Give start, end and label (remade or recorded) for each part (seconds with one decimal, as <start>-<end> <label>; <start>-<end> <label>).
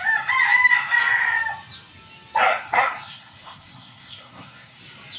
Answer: 0.0-2.5 recorded; 2.5-4.8 remade; 4.8-5.2 recorded